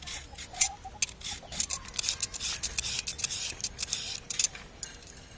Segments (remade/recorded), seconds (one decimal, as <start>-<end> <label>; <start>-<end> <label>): 0.0-5.4 recorded